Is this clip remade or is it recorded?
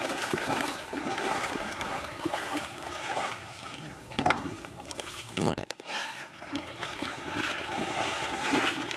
remade